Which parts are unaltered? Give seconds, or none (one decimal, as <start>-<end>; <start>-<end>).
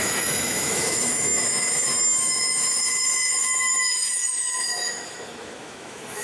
none